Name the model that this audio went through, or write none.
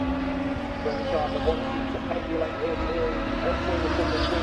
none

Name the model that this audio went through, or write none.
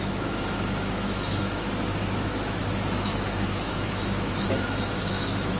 autoencoder, DAC-VAE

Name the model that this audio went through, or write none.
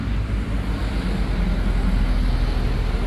none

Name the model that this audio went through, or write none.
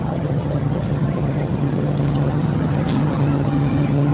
vocoder, HiFi-GAN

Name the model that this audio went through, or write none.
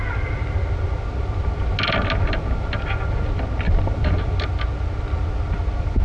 none